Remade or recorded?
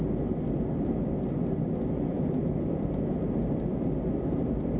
recorded